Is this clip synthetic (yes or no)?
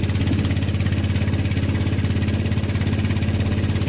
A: no